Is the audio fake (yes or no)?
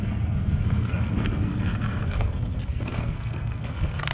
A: yes